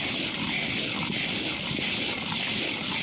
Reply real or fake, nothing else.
real